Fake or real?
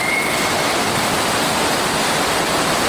real